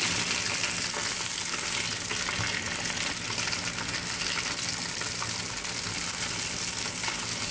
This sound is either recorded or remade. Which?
recorded